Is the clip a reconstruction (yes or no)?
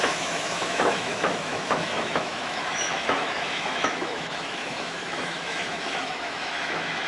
yes